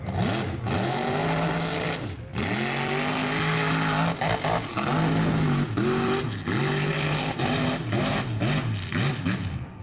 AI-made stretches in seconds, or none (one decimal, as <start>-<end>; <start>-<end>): none